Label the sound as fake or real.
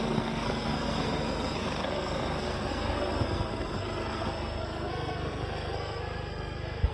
fake